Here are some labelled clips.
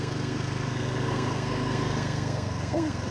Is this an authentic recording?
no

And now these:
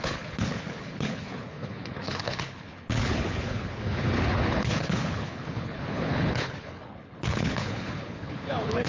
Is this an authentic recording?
no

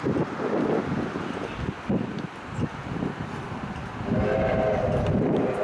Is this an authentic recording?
yes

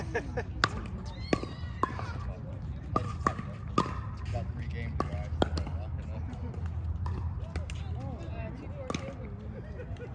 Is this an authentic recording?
yes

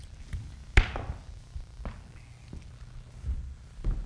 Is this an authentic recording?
yes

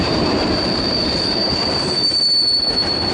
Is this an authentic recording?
no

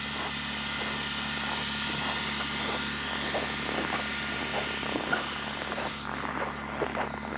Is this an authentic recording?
yes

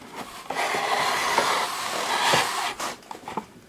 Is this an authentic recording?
yes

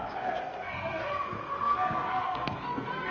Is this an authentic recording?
no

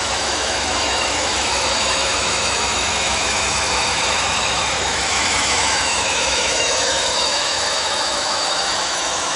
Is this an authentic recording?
no